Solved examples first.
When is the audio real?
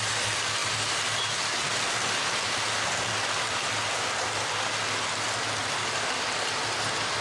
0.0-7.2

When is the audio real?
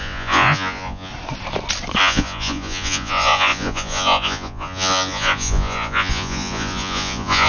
1.1-2.0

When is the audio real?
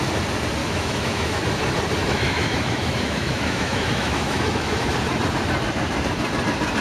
0.0-0.6; 1.4-2.0; 4.9-6.8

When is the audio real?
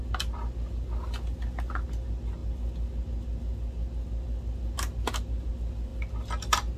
0.0-6.8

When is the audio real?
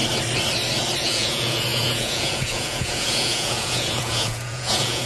0.0-1.0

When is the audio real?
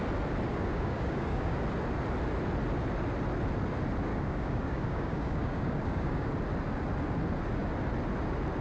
0.0-0.5; 1.6-4.1; 6.3-8.6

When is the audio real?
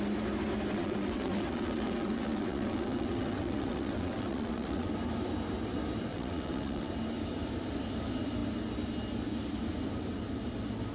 0.0-0.7; 4.9-6.1; 6.9-10.9